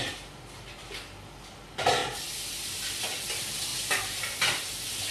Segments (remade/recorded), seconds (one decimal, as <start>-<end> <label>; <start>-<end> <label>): 0.0-5.1 recorded